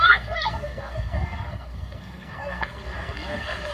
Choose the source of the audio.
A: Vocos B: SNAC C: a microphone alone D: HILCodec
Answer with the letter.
B